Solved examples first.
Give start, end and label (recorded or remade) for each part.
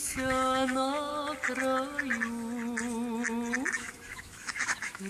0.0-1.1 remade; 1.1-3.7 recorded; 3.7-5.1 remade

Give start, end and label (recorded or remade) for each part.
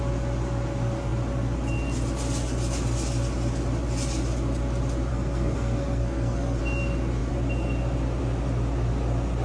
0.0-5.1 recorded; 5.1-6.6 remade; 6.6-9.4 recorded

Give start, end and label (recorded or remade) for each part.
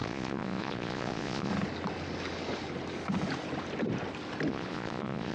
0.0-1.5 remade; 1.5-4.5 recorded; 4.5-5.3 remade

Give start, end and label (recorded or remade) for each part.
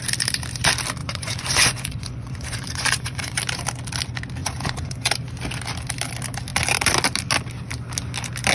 0.0-1.0 recorded; 1.0-3.4 remade; 3.4-4.4 recorded; 4.4-5.1 remade; 5.1-8.5 recorded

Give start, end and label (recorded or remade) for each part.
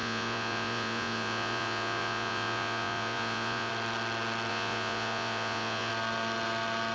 0.0-3.7 remade; 3.7-4.5 recorded; 4.5-5.9 remade; 5.9-6.9 recorded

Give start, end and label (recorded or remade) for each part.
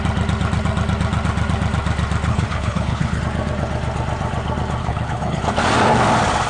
0.0-2.3 recorded; 2.3-3.2 remade; 3.2-4.8 recorded; 4.8-5.4 remade; 5.4-6.5 recorded